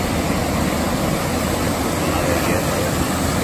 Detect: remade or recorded recorded